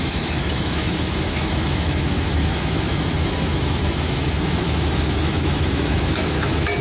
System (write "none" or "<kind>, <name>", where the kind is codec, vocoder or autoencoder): autoencoder, DAC-VAE